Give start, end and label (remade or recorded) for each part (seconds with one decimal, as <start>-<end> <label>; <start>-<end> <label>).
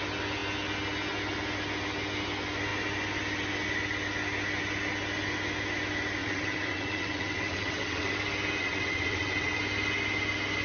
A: 0.0-6.2 recorded; 6.2-8.1 remade; 8.1-8.6 recorded; 8.6-9.6 remade; 9.6-10.6 recorded